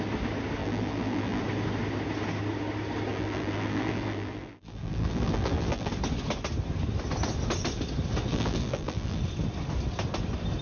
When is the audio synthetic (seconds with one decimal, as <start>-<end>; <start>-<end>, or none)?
0.6-1.4; 3.1-5.9; 8.3-9.2